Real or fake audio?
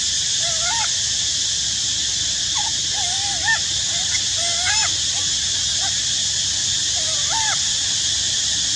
real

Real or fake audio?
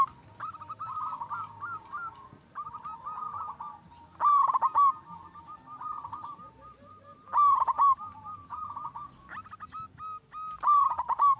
real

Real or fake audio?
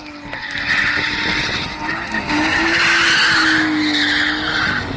real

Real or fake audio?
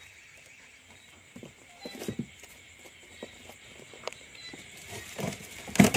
fake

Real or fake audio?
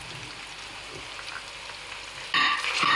real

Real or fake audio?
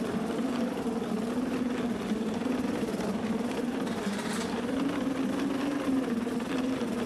real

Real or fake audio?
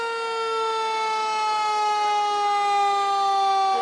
real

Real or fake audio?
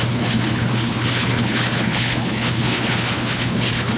fake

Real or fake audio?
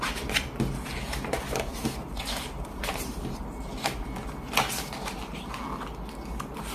real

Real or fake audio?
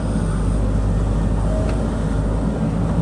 real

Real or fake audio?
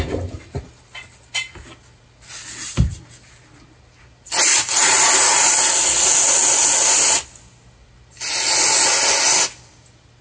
real